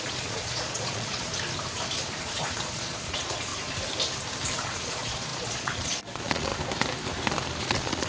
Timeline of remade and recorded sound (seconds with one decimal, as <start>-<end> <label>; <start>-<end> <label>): 0.0-1.3 remade; 1.3-2.2 recorded; 2.2-3.5 remade; 3.5-4.6 recorded; 4.6-6.5 remade; 6.5-7.6 recorded; 7.6-8.1 remade